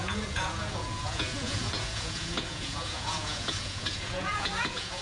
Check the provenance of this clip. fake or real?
fake